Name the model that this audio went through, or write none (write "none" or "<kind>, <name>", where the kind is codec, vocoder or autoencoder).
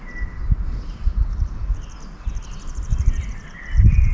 none